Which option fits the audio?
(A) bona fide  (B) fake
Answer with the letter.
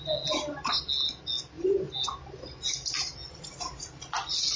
A